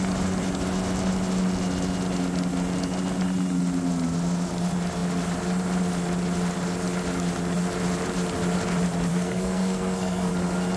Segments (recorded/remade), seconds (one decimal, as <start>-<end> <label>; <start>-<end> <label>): 0.0-9.1 recorded; 9.1-10.3 remade; 10.3-10.8 recorded